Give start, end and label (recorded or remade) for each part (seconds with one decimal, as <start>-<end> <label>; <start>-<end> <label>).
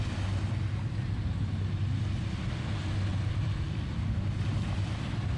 0.0-5.4 recorded